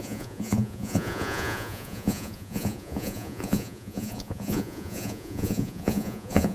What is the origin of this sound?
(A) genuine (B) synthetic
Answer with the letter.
B